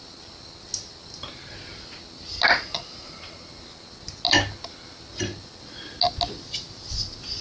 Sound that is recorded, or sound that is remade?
recorded